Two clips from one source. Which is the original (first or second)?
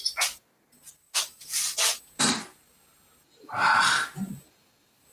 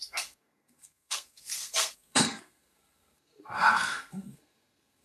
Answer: first